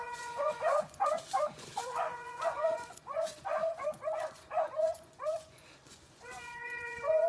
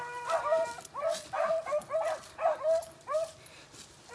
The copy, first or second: first